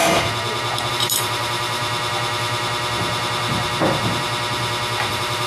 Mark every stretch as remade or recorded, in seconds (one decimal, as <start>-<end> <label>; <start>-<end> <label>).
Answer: 0.0-0.9 recorded; 0.9-1.8 remade; 1.8-5.1 recorded; 5.1-5.5 remade